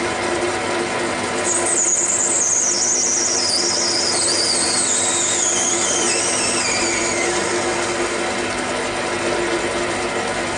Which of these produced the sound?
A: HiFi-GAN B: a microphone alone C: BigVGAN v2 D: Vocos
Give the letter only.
B